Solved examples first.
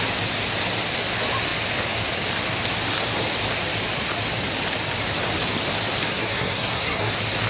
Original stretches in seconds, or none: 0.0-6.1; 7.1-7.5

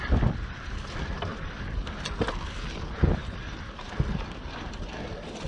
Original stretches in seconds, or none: 0.0-5.5

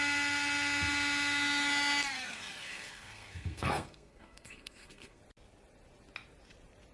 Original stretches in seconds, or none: 0.0-2.1; 5.2-6.9